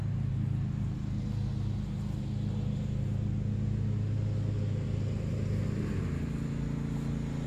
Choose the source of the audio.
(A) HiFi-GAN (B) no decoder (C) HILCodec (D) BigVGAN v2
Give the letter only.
B